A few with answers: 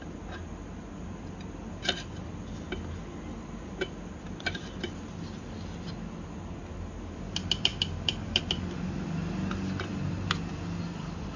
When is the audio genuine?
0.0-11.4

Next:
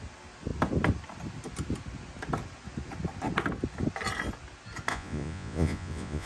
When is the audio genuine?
0.0-4.9

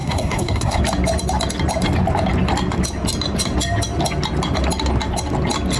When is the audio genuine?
0.8-5.8

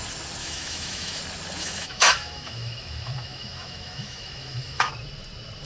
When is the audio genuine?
0.0-0.4; 1.2-1.6; 4.9-5.7

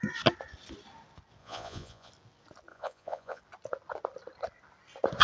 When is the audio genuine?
0.0-1.4; 2.1-2.7; 3.4-5.2

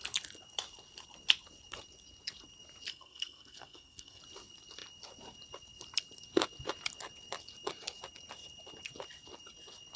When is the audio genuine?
0.0-2.9; 4.2-10.0

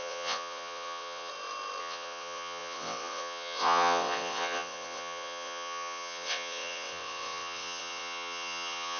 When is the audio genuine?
1.3-1.8

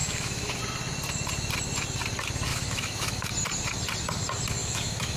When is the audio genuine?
0.6-2.5; 3.3-4.6